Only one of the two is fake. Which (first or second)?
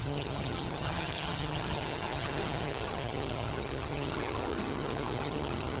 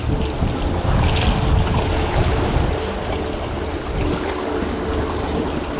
first